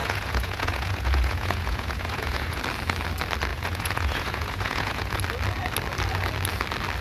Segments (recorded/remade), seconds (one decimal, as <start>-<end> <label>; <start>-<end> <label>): 0.0-2.6 remade; 2.6-3.5 recorded; 3.5-5.2 remade; 5.2-7.0 recorded